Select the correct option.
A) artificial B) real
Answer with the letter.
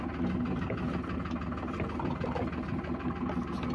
B